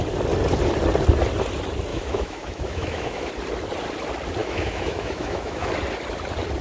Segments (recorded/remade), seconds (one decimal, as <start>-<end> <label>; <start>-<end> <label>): 0.0-1.9 recorded; 1.9-3.3 remade; 3.3-4.4 recorded; 4.4-5.7 remade; 5.7-6.6 recorded